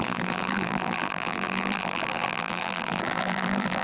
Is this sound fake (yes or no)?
yes